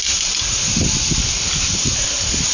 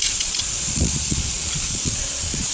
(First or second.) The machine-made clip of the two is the second